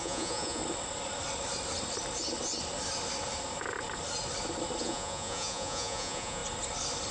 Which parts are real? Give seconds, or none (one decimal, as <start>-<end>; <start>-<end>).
0.6-4.8; 6.4-7.1